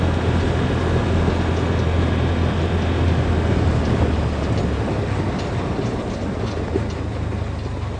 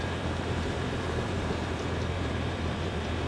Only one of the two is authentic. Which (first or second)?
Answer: first